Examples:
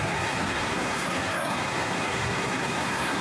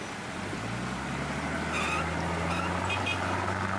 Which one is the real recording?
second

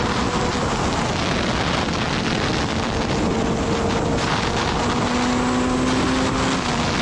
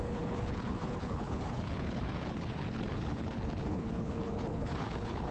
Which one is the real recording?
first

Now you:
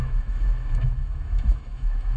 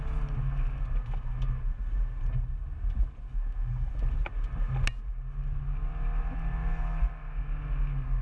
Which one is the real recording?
second